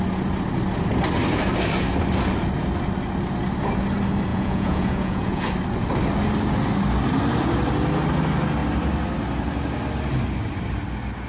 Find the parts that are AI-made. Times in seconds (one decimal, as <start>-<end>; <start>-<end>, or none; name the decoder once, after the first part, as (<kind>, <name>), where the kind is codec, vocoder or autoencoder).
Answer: 4.3-5.5 (vocoder, Vocos)